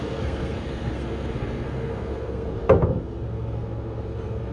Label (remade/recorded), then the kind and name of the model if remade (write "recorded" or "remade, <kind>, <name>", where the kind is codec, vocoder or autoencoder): remade, codec, SNAC